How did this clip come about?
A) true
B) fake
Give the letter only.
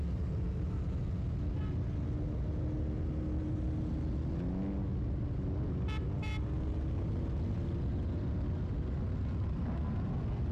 A